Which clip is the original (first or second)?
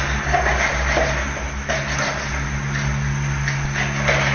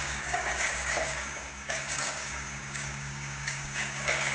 first